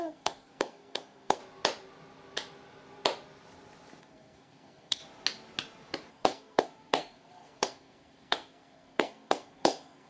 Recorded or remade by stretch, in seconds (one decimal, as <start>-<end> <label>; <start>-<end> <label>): 0.0-1.4 remade; 1.4-4.0 recorded; 4.0-5.0 remade; 5.0-6.1 recorded; 6.1-10.1 remade